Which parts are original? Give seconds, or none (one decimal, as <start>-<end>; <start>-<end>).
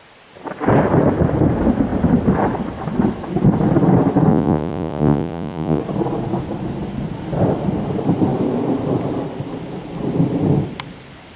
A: 0.0-4.3; 5.8-11.4